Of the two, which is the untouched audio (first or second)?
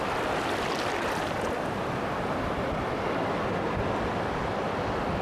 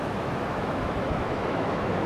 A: first